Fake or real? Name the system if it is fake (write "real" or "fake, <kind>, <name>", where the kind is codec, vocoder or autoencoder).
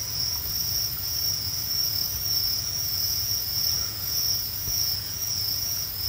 fake, vocoder, Vocos